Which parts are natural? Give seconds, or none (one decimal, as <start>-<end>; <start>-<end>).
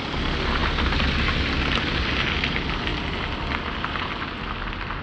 0.0-5.0